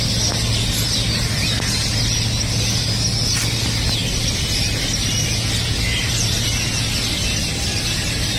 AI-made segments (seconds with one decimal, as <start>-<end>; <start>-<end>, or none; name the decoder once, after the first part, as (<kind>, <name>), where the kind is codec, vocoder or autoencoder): none